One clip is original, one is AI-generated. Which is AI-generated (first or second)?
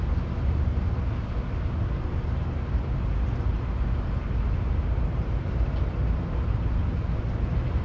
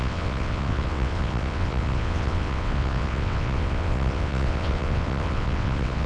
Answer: second